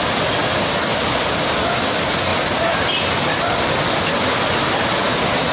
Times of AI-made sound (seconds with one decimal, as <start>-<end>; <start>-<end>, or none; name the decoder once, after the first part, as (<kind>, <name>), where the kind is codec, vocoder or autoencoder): none